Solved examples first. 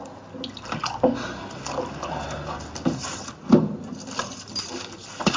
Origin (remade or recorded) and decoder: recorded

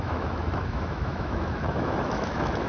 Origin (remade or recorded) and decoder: remade, autoencoder, DAC-VAE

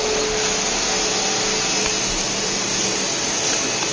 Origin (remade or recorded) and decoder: recorded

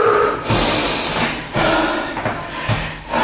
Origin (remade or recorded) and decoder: recorded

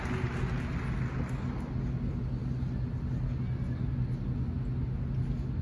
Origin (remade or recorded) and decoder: recorded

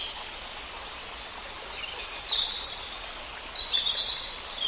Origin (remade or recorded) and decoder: recorded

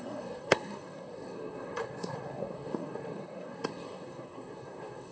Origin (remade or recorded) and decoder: remade, codec, SNAC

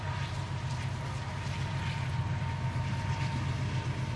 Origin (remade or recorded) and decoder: recorded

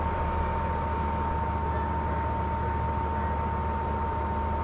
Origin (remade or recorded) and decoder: recorded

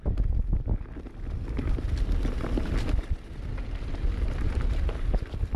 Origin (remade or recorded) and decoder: recorded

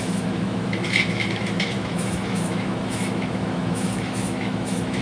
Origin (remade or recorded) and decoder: remade, autoencoder, DAC-VAE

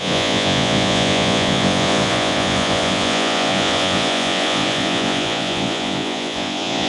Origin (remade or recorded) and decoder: remade, vocoder, Vocos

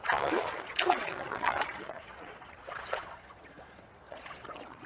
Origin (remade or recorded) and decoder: remade, vocoder, Vocos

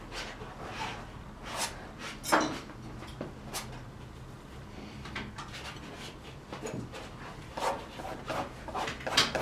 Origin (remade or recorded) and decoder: recorded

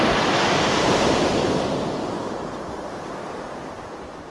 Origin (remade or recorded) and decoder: remade, vocoder, BigVGAN v2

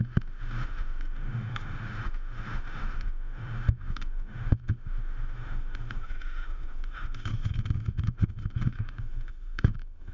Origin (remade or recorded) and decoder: remade, autoencoder, DAC-VAE